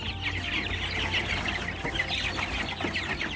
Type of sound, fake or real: real